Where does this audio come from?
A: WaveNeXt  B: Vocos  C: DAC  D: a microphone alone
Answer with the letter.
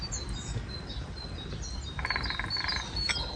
D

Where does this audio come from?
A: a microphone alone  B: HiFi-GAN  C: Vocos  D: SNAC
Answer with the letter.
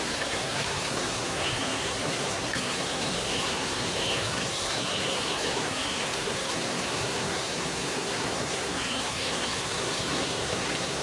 D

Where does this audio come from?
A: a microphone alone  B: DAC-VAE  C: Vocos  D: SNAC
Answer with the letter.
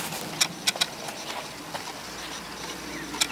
A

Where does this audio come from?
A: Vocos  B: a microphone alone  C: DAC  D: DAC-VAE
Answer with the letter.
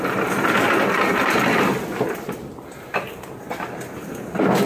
B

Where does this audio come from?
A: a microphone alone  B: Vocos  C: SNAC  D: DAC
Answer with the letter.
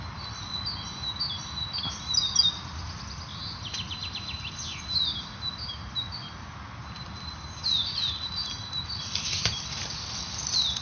A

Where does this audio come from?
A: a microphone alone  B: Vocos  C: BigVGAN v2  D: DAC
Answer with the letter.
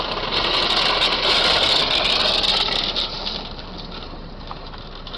A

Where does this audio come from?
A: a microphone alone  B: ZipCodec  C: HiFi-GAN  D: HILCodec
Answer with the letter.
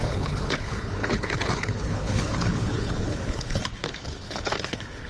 D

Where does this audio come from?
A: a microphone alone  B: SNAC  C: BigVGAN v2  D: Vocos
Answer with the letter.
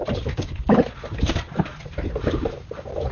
A